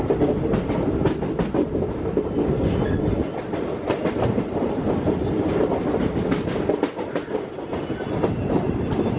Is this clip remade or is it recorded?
recorded